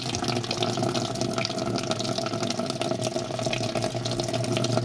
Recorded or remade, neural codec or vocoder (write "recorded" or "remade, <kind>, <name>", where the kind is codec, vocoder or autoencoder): recorded